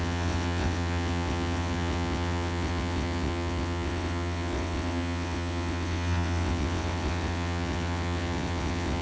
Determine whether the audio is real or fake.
fake